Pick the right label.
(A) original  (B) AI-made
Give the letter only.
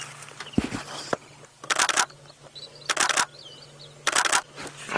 A